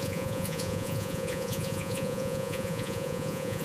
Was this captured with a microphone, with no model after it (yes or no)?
no